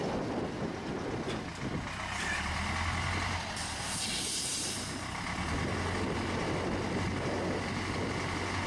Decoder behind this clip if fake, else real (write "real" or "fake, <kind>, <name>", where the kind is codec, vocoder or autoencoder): real